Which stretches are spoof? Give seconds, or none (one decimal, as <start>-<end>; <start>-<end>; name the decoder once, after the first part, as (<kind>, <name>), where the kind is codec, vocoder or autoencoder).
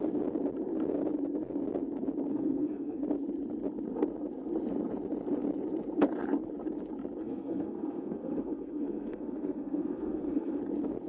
2.3-3.0 (codec, SNAC); 7.2-10.6